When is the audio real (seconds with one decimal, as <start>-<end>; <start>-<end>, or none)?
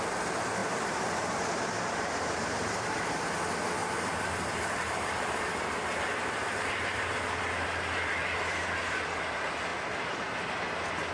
0.0-0.6; 3.3-3.8; 7.2-11.1